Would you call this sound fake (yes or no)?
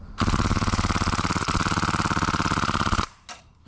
no